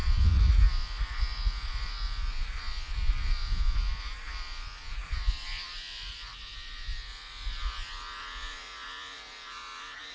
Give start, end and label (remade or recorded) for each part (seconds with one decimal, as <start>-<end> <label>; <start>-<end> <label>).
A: 0.0-10.1 remade